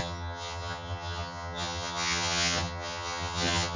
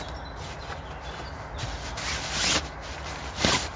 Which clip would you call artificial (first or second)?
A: first